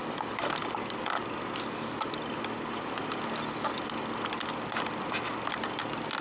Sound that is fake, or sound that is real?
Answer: real